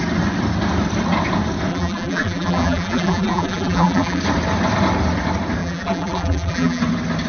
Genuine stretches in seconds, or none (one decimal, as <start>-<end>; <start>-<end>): 0.0-1.7; 4.2-5.6; 6.8-7.3